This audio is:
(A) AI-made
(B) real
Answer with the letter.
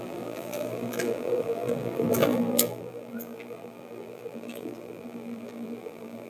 A